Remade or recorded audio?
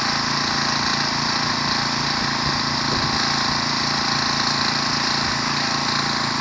recorded